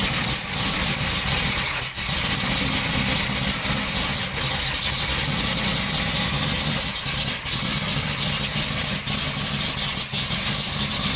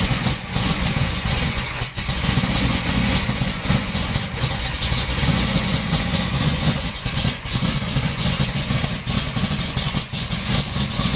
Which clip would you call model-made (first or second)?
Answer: second